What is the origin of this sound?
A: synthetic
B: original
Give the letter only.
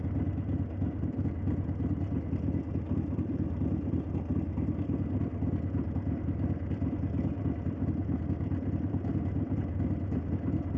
B